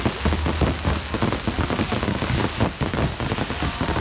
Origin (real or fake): real